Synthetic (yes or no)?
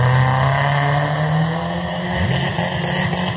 no